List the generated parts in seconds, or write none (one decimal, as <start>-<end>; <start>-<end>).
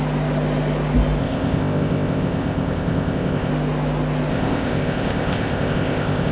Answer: 1.2-3.5; 4.3-6.3